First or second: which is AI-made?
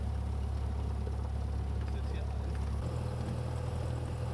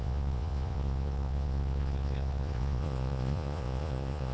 second